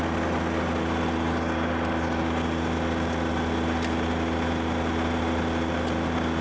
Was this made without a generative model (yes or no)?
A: yes